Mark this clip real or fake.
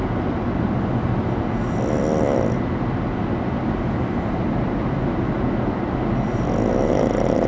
real